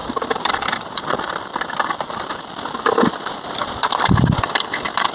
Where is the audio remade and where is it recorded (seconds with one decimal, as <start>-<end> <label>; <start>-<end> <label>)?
0.0-5.1 remade

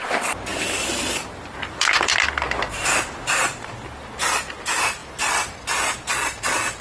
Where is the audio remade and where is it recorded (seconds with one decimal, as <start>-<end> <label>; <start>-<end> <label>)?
0.0-0.5 recorded; 0.5-4.6 remade; 4.6-6.8 recorded